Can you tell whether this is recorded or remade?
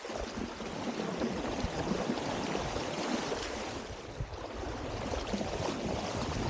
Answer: recorded